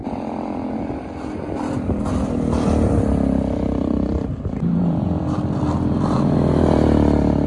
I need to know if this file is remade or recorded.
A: remade